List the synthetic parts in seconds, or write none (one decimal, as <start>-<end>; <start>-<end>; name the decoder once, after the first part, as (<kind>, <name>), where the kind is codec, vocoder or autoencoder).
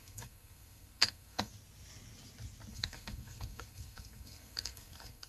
0.0-1.5 (codec, SNAC); 2.7-5.3